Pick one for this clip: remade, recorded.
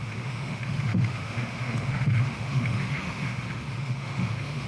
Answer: remade